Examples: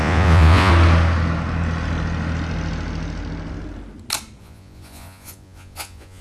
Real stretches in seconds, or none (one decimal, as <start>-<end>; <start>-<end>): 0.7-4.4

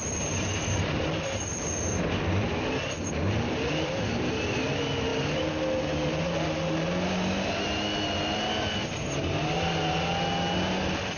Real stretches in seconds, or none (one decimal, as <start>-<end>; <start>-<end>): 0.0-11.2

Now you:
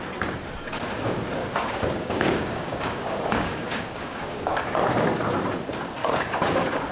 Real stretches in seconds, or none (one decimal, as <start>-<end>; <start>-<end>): 0.0-1.4; 4.6-6.0

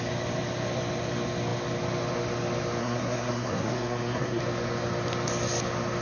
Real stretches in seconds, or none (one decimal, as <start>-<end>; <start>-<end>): 0.0-2.8; 4.4-6.0

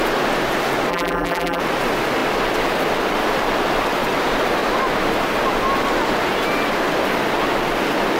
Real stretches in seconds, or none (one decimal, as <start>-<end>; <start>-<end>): 0.0-0.9; 1.6-8.2